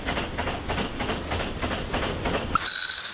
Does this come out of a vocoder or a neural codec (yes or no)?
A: no